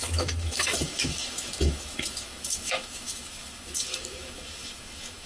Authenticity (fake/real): fake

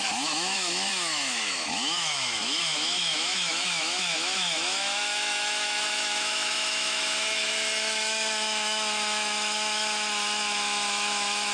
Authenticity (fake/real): fake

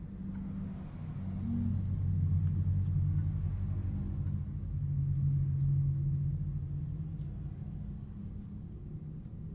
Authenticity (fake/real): real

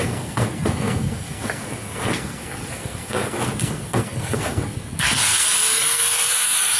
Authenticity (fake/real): fake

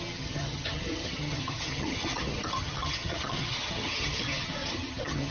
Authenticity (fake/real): fake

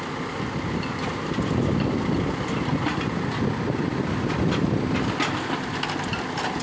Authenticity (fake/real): real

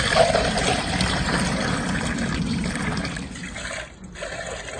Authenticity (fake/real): real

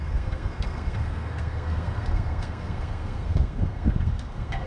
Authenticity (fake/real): fake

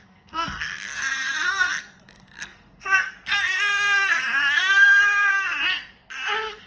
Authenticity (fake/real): fake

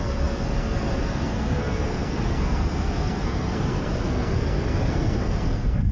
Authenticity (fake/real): fake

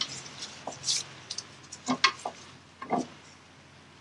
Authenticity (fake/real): real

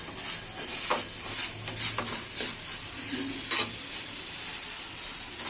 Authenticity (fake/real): real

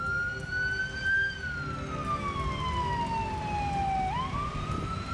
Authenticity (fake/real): real